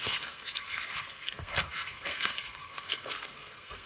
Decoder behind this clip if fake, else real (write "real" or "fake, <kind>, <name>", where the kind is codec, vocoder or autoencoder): fake, codec, SNAC